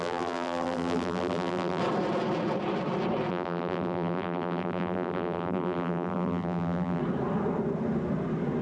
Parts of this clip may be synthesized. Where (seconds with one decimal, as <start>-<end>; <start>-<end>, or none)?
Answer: 0.0-1.8; 3.3-7.0